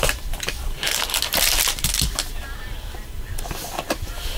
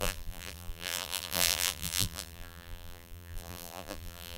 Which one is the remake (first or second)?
second